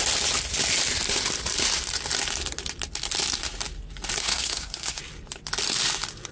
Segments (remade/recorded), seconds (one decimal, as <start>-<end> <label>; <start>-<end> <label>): 0.0-4.2 recorded; 4.2-5.0 remade; 5.0-6.3 recorded